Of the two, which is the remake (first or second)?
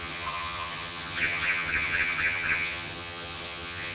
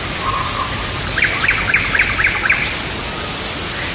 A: first